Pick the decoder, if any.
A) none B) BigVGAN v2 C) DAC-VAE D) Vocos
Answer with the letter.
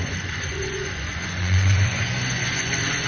D